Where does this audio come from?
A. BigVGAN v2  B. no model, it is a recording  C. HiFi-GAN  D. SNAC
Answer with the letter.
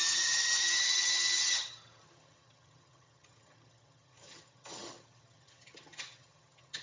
C